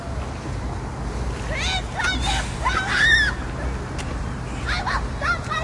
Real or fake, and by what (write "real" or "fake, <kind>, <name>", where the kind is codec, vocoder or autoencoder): real